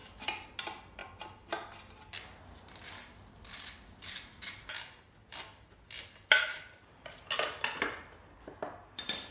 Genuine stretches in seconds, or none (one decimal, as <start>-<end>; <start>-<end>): 0.0-8.0